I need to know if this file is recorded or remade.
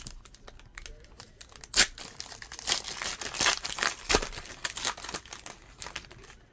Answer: recorded